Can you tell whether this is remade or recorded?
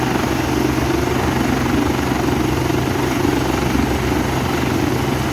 recorded